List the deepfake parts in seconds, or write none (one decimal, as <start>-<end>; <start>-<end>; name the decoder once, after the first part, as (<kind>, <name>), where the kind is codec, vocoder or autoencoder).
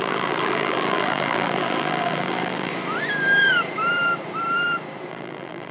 0.0-2.7 (vocoder, BigVGAN v2); 5.1-5.7